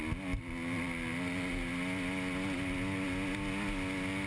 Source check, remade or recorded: recorded